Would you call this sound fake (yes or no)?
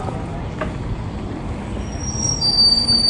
no